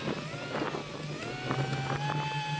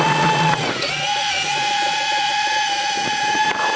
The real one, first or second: first